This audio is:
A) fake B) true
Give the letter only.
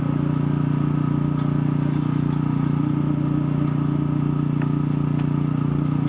B